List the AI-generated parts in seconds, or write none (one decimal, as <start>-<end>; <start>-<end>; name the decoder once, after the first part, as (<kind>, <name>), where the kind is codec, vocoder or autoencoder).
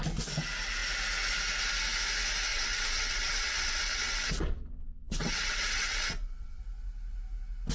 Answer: 2.5-6.6 (vocoder, WaveNeXt)